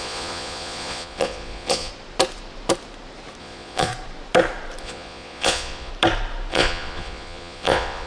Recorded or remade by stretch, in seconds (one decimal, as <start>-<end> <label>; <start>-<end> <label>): 0.0-1.9 remade; 1.9-3.4 recorded; 3.4-3.9 remade; 3.9-4.8 recorded; 4.8-5.9 remade; 5.9-6.5 recorded; 6.5-8.1 remade